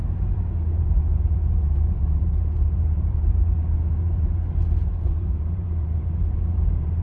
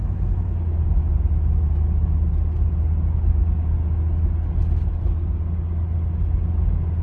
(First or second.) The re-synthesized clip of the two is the first